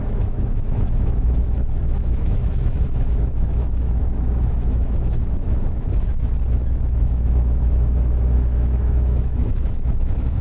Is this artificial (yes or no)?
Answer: yes